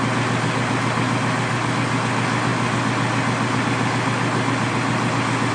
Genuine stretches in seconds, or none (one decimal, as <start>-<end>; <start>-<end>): 0.0-5.5